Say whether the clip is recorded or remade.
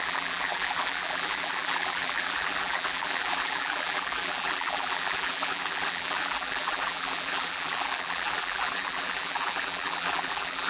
remade